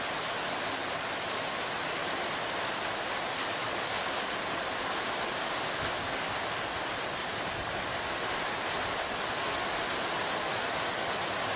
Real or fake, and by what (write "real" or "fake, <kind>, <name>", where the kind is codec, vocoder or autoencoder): real